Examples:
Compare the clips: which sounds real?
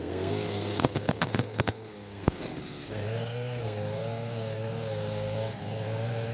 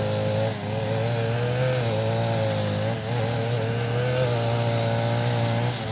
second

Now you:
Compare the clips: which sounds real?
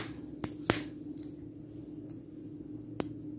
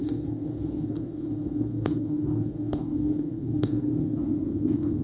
first